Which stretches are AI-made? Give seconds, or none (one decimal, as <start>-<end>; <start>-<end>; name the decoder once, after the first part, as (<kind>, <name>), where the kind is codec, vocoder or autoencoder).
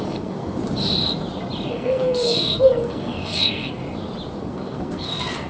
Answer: 0.0-0.6 (codec, SNAC); 1.7-3.8; 4.4-5.5